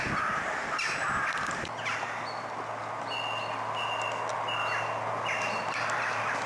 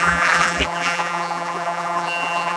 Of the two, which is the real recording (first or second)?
first